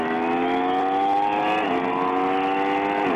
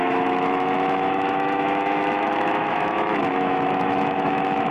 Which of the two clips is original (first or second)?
first